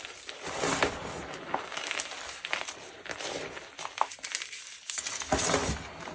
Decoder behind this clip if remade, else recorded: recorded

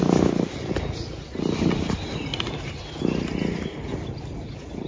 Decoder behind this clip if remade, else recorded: recorded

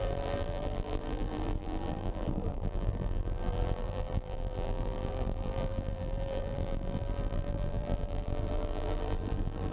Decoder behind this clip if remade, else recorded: remade, vocoder, BigVGAN v2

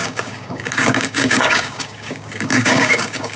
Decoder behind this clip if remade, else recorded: remade, codec, DAC